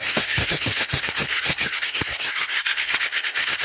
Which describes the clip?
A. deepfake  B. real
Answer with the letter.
A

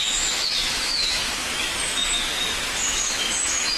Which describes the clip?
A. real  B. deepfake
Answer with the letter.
B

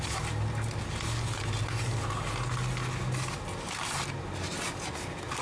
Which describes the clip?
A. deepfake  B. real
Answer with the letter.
B